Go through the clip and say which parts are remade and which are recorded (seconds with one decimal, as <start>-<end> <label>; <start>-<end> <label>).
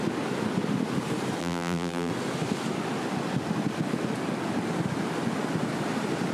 0.0-1.4 recorded; 1.4-2.1 remade; 2.1-6.3 recorded